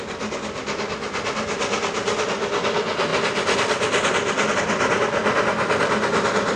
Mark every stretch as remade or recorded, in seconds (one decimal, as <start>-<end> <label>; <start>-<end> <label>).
0.0-6.6 recorded